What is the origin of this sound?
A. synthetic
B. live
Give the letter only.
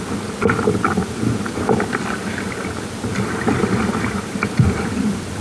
B